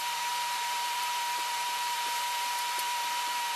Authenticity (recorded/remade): remade